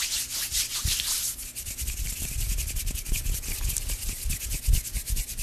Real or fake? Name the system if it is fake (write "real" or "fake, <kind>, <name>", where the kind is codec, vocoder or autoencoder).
real